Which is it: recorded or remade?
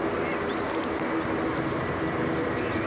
recorded